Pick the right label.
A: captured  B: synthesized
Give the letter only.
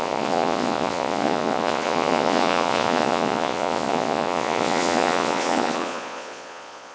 B